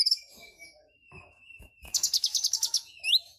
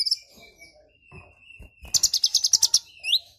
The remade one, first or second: first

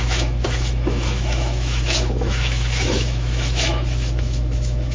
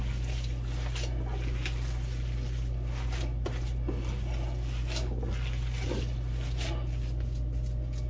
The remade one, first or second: first